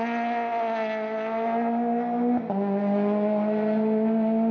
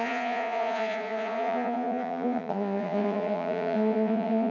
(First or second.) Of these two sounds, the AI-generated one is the second